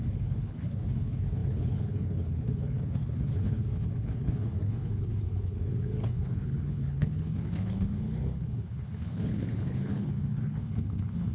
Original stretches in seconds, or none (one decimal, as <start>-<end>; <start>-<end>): none